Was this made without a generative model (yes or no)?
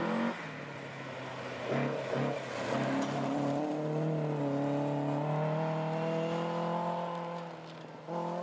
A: yes